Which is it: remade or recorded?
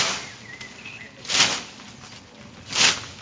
recorded